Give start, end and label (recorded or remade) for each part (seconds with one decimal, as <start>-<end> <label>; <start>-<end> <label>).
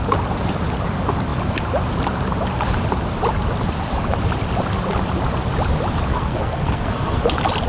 0.0-6.1 recorded; 6.1-7.2 remade; 7.2-7.7 recorded